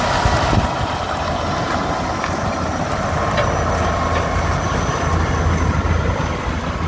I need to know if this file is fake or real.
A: real